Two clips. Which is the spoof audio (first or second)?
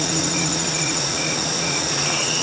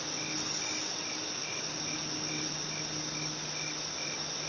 first